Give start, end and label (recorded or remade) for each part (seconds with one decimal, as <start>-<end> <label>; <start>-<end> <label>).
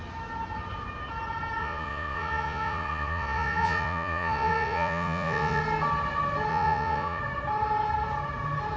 0.0-1.6 recorded; 1.6-5.6 remade; 5.6-6.5 recorded; 6.5-7.2 remade; 7.2-8.8 recorded